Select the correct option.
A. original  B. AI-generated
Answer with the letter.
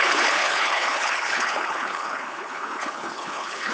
B